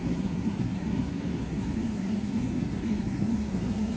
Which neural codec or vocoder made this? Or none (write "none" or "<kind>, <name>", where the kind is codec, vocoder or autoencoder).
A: codec, SNAC